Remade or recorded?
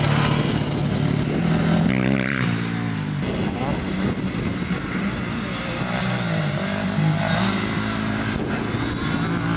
recorded